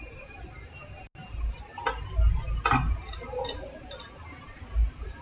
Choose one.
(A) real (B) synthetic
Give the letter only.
A